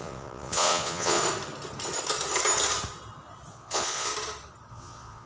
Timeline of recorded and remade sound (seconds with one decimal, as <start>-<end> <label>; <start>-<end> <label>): 0.0-1.2 remade; 1.2-3.5 recorded; 3.5-4.1 remade; 4.1-4.7 recorded; 4.7-5.3 remade